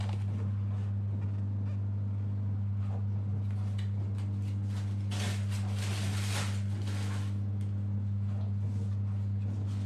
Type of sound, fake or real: real